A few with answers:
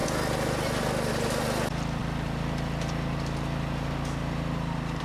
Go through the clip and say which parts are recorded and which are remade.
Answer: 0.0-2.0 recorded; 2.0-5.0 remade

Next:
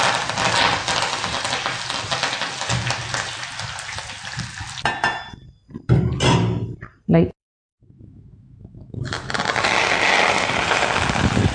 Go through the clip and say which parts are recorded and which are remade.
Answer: 0.0-7.4 recorded; 7.4-9.4 remade; 9.4-11.5 recorded

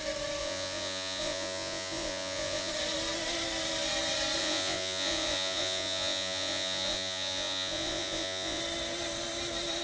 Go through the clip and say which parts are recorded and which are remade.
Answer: 0.0-0.4 recorded; 0.4-2.7 remade; 2.7-4.4 recorded; 4.4-8.6 remade; 8.6-9.8 recorded